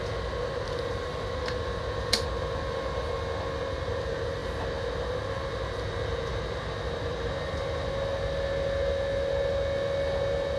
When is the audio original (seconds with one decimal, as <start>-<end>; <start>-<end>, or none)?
0.0-10.6